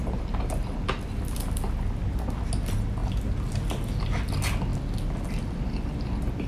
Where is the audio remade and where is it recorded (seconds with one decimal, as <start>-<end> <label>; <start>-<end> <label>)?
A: 0.0-6.5 recorded